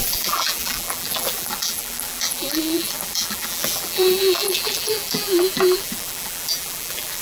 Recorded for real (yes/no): no